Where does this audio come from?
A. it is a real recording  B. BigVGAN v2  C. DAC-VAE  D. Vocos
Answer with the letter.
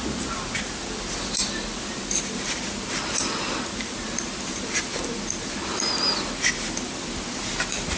A